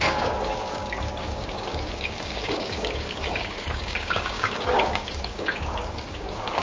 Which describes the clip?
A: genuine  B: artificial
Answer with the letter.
B